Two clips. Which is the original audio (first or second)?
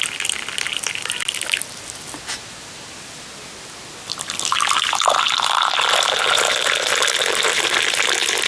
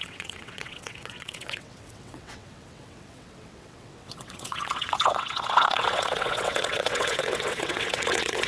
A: first